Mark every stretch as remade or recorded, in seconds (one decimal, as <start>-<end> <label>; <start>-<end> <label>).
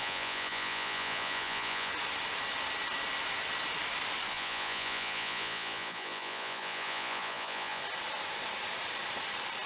0.0-1.9 remade; 1.9-4.3 recorded; 4.3-7.8 remade; 7.8-9.7 recorded